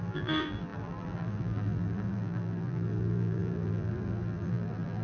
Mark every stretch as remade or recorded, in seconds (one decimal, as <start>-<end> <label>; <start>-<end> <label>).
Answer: 0.0-5.0 remade